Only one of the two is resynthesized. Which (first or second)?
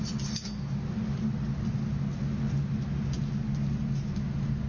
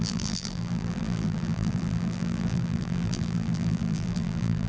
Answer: second